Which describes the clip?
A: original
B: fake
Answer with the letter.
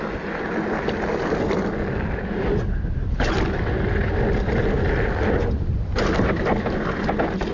A